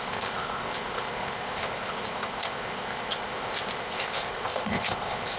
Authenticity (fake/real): fake